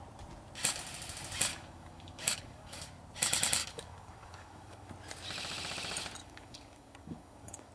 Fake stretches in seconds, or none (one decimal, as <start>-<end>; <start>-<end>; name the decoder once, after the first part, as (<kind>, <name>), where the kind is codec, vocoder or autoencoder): 1.5-2.9 (codec, DAC); 3.6-4.9; 6.2-7.7

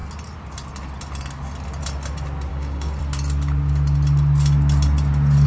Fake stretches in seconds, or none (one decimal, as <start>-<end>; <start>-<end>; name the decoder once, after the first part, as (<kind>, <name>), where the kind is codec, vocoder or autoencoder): 2.5-3.0 (codec, DAC)

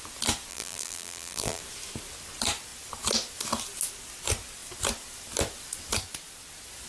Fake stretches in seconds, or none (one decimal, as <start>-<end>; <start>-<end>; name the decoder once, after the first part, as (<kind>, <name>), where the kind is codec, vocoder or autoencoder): 0.5-1.6 (vocoder, BigVGAN v2)

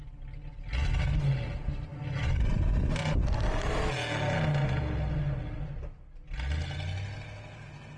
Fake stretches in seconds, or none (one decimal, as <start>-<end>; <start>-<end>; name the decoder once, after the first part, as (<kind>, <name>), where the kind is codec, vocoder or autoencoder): none

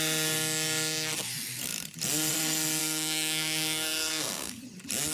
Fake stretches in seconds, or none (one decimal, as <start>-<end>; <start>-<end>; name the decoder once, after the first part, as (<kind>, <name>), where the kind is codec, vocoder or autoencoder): 2.8-4.6 (codec, SNAC)

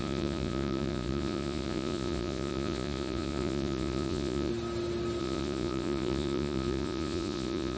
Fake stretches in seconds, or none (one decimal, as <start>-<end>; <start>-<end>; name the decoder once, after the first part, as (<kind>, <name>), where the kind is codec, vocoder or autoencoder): 0.0-4.5 (vocoder, Vocos); 5.2-7.8

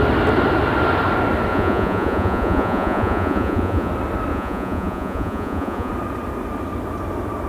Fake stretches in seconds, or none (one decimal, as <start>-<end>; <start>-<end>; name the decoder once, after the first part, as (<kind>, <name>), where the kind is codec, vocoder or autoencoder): 1.5-3.9 (vocoder, Vocos); 4.3-5.9

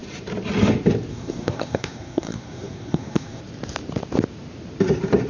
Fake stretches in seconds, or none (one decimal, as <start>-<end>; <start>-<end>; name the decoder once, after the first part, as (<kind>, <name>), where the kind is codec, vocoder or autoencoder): 1.1-3.4 (codec, SNAC)